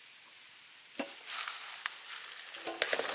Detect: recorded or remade recorded